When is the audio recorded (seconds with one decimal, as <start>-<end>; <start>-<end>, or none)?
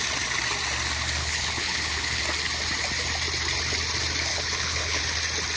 0.0-1.2; 2.2-4.3; 5.0-5.6